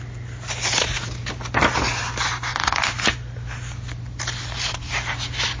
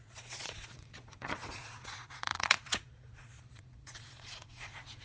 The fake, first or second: second